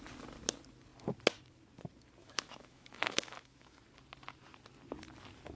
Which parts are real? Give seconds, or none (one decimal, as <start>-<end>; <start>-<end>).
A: 0.0-2.2; 3.8-5.6